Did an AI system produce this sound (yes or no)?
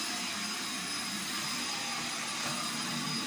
no